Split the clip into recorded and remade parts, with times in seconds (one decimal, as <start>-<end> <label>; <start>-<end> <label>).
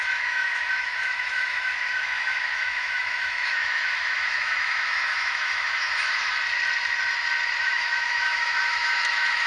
0.0-6.3 remade; 6.3-7.6 recorded; 7.6-9.5 remade